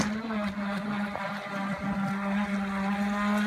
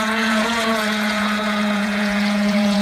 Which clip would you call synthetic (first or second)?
second